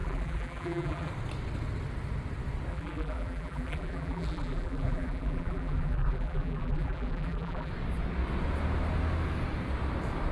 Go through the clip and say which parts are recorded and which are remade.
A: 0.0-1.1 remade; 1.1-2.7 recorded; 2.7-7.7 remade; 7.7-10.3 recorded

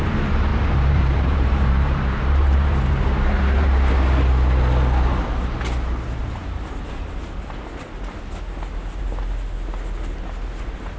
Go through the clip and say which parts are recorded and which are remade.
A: 0.0-0.5 recorded; 0.5-3.9 remade; 3.9-11.0 recorded